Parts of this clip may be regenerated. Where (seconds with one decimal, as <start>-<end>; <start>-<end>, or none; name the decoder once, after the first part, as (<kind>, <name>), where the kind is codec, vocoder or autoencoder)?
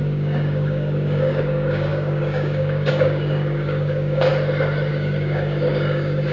0.0-4.3 (codec, DAC); 4.9-6.3